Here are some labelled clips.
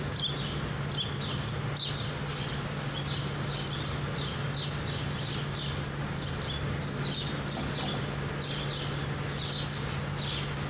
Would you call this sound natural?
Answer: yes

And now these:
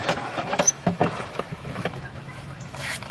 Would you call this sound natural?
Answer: no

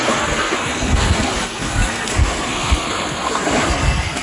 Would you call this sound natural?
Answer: no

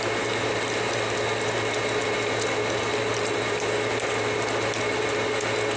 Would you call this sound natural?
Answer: yes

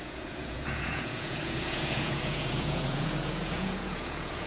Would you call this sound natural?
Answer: no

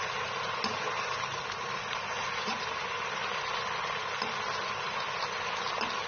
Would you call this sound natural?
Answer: yes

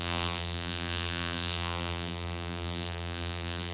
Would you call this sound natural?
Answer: no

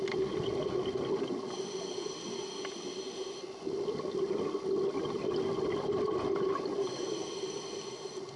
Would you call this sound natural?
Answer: yes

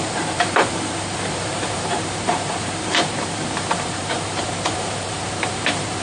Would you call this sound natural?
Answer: no